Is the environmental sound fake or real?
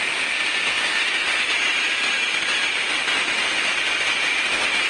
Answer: real